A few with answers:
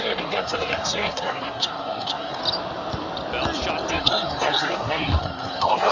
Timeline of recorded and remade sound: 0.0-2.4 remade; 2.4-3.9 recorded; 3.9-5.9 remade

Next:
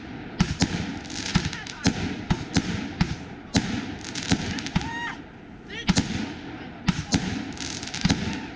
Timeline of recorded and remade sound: 0.0-8.6 recorded

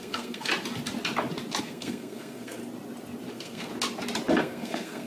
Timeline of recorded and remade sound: 0.0-0.5 remade; 0.5-1.6 recorded; 1.6-2.6 remade; 2.6-3.3 recorded; 3.3-3.7 remade; 3.7-4.4 recorded; 4.4-5.1 remade

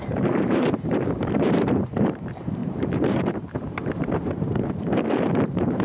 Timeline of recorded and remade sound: 0.0-5.8 remade

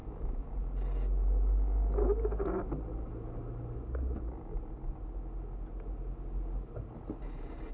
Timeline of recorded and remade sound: 0.0-0.5 remade; 0.5-7.7 recorded

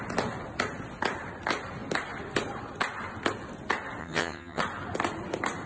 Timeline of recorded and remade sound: 0.0-4.0 recorded; 4.0-4.6 remade; 4.6-5.7 recorded

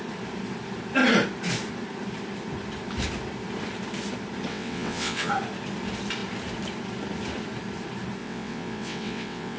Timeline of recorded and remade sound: 0.0-4.5 recorded; 4.5-5.3 remade; 5.3-8.2 recorded; 8.2-9.6 remade